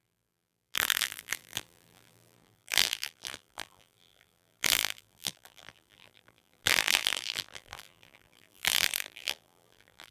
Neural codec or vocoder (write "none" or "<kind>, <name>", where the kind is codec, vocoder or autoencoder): vocoder, BigVGAN v2